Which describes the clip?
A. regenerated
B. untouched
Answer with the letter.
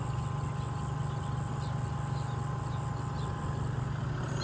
B